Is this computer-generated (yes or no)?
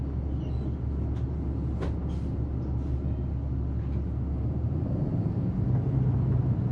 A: no